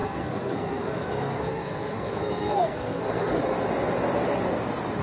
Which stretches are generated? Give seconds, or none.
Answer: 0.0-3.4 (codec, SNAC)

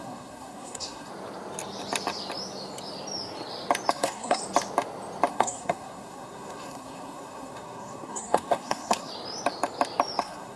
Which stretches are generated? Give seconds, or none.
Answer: 0.0-1.1 (codec, SNAC); 3.9-4.4; 5.3-9.1; 10.2-10.6